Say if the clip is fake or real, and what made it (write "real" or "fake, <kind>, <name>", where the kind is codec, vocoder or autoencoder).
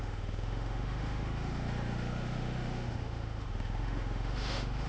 fake, autoencoder, DAC-VAE